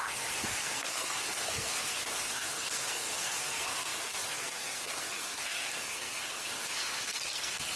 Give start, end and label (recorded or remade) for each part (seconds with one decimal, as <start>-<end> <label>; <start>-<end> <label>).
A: 0.0-7.8 remade